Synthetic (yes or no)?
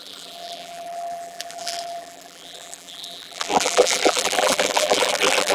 yes